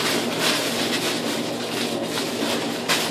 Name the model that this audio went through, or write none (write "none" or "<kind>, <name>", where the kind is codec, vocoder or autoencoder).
none